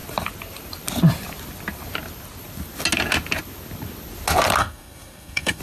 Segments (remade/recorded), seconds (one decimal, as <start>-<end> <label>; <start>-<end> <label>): 0.0-4.6 recorded; 4.6-5.6 remade